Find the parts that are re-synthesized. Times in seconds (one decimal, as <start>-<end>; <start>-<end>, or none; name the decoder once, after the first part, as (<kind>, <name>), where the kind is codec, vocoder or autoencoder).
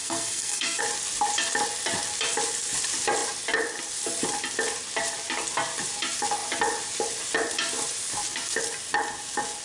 0.0-0.8 (codec, SNAC)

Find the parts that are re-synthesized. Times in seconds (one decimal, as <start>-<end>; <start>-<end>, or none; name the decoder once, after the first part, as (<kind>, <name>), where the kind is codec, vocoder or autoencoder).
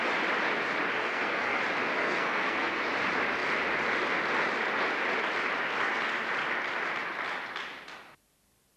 1.0-1.6 (codec, SNAC); 2.0-2.8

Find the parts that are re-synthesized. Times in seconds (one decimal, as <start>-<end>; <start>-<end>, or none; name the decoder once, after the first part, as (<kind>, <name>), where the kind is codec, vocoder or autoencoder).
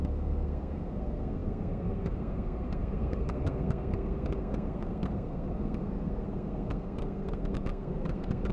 0.0-8.5 (codec, SNAC)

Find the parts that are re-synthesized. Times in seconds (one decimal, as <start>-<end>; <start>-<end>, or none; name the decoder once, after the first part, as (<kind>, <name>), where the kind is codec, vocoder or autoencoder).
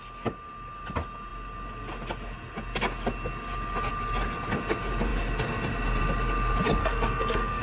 6.8-7.6 (codec, SNAC)